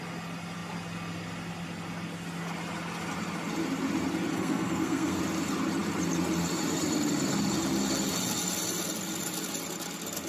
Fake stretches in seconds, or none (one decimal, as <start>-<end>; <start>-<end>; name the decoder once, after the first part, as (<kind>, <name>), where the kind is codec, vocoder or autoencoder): 4.3-5.2 (codec, SNAC)

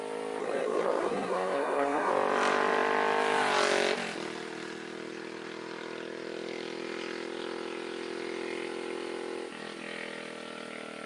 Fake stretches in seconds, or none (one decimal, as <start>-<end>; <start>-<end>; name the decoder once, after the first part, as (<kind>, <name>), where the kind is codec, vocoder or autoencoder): 0.4-2.1 (codec, SNAC)

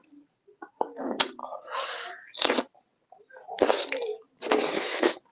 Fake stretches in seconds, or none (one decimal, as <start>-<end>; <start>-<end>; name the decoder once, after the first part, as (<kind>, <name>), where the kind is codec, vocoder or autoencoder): none

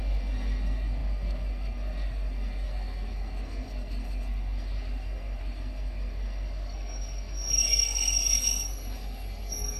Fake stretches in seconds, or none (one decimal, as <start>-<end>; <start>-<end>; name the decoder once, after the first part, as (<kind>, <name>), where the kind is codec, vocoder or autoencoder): 0.0-9.8 (codec, SNAC)

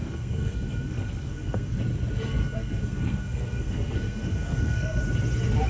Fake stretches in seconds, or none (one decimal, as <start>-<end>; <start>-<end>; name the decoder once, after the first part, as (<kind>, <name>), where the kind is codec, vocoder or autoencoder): 0.0-1.8 (codec, SNAC); 2.4-5.0

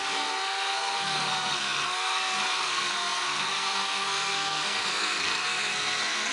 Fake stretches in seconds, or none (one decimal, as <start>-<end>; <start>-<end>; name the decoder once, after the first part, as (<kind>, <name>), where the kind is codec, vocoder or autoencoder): 0.0-6.3 (codec, SNAC)

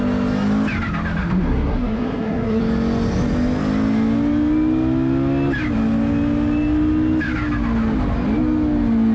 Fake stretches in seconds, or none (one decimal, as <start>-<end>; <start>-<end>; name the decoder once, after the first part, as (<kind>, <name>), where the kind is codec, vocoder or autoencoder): 1.2-2.6 (codec, SNAC)

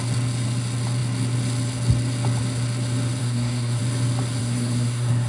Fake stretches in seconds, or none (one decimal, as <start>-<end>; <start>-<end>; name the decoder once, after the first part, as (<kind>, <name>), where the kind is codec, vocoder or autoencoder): 3.2-3.8 (codec, SNAC); 4.4-5.3